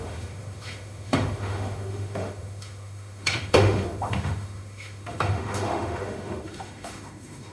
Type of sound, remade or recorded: remade